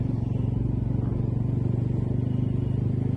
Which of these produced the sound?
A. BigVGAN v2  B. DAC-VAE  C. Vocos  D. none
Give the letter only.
D